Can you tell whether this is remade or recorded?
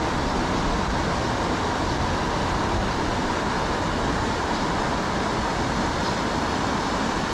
recorded